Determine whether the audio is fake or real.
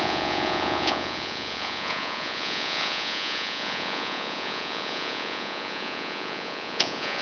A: fake